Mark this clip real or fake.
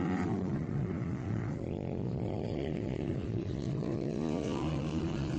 fake